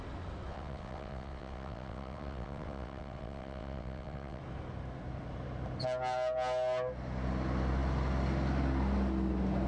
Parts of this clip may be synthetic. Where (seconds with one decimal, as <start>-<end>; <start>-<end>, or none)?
0.5-4.4